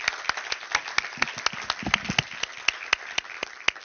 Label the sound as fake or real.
real